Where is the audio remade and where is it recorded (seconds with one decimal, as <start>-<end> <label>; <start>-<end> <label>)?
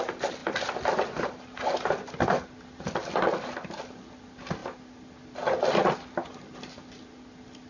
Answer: 0.0-7.7 recorded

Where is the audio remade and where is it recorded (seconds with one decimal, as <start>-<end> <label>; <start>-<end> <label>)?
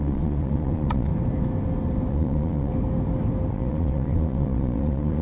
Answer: 0.0-1.1 remade; 1.1-2.1 recorded; 2.1-2.7 remade; 2.7-3.5 recorded; 3.5-5.2 remade